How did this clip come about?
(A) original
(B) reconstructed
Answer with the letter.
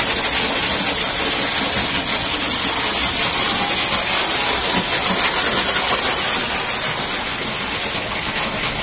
A